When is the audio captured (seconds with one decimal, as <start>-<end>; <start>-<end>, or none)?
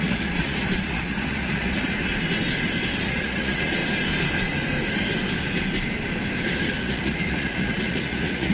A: 2.1-3.0; 3.8-6.8